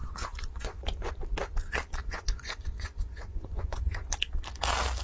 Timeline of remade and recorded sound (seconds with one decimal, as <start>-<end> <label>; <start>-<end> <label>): 0.0-1.1 remade; 1.1-2.0 recorded; 2.0-4.1 remade; 4.1-5.0 recorded